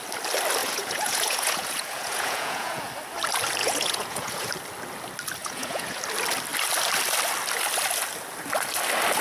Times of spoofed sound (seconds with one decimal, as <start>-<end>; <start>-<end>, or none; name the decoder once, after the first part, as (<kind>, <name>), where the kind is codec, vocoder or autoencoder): 0.6-2.9 (vocoder, Vocos); 3.6-4.5; 5.4-6.0